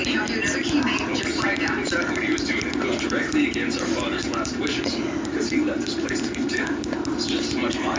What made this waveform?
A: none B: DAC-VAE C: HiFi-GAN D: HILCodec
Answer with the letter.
A